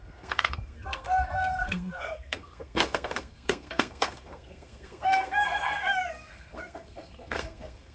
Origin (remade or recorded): remade